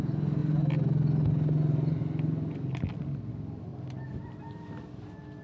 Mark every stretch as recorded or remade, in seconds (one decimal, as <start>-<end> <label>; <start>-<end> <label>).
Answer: 0.0-3.7 recorded; 3.7-4.4 remade; 4.4-5.4 recorded